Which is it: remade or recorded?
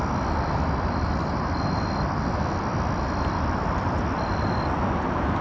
recorded